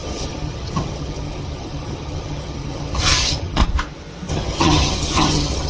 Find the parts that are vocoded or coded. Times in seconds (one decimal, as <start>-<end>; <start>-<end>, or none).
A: 0.0-3.6; 4.3-5.7